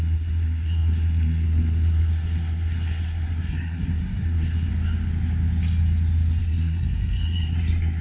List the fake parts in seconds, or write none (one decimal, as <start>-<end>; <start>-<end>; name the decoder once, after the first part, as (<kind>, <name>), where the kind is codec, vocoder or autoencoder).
0.0-4.7 (codec, SNAC); 6.4-8.0